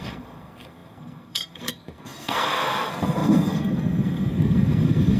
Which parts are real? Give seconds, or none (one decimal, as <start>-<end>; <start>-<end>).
none